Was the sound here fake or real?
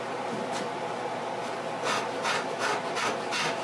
real